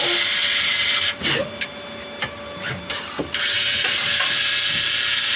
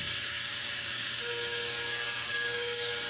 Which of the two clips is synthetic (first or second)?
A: second